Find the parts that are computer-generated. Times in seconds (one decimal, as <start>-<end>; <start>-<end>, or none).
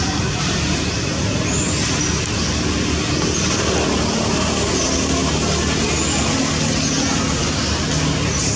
none